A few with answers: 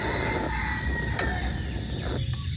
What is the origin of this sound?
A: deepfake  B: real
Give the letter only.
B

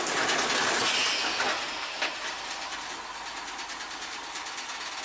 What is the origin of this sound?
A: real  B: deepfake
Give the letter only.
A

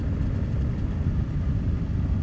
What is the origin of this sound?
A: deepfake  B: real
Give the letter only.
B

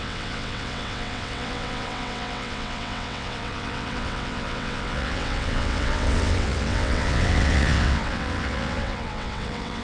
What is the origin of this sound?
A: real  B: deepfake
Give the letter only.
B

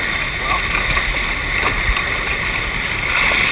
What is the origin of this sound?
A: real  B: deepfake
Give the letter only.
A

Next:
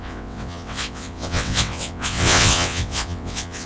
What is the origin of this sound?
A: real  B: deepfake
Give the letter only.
B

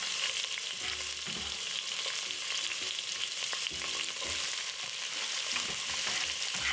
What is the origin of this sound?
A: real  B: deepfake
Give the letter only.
A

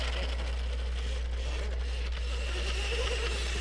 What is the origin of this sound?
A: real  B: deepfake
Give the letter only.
A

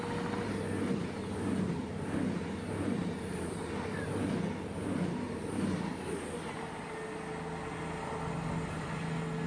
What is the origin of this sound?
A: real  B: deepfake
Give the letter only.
A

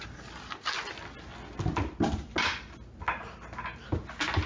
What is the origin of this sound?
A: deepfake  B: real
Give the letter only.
B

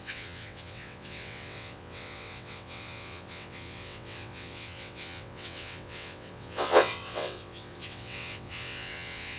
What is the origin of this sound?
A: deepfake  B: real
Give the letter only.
A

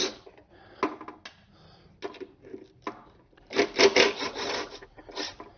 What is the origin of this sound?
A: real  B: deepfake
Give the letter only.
A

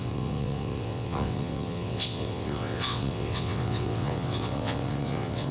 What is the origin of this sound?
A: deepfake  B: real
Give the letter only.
A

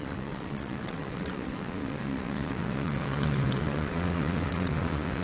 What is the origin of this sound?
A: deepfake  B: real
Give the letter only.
A